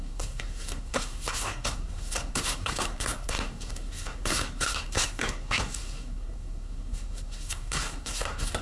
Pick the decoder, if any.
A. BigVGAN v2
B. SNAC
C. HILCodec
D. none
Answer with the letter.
B